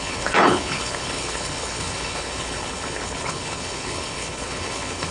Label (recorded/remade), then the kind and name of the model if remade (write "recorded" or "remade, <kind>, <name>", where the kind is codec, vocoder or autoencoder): remade, codec, HILCodec